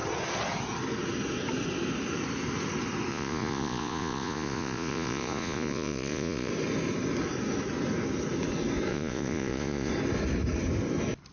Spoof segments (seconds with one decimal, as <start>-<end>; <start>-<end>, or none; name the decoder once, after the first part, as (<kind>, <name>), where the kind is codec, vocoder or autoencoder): 3.1-6.5 (vocoder, Vocos); 8.9-9.9